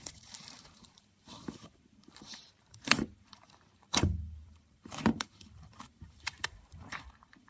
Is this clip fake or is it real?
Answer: fake